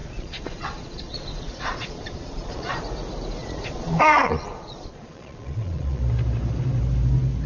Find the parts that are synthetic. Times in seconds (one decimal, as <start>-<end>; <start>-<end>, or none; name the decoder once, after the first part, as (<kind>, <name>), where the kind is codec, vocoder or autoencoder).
0.0-2.8 (vocoder, Vocos); 3.4-6.0